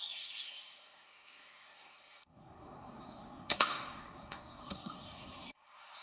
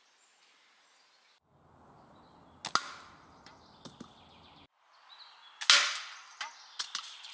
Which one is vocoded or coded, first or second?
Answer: first